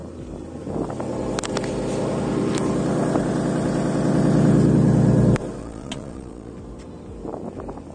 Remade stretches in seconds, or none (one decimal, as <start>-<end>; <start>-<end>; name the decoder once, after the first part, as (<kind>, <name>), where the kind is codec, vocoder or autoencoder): 5.6-6.5 (vocoder, Vocos)

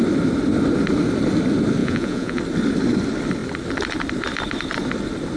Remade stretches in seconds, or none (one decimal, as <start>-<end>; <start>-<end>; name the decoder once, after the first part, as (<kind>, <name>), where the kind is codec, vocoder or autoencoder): 1.8-2.4 (vocoder, Vocos)

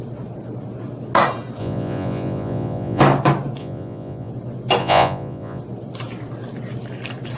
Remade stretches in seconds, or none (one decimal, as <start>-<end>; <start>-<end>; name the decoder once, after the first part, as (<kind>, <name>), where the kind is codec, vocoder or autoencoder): 1.6-3.0 (vocoder, Vocos); 3.6-4.3; 4.8-5.6

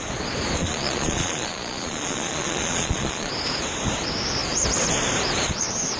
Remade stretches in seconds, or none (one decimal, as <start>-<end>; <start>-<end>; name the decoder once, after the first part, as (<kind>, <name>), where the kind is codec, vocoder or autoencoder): 0.6-3.3 (vocoder, Vocos)